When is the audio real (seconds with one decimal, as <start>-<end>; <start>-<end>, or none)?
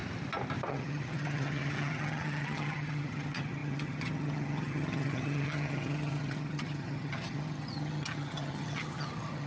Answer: 0.0-0.7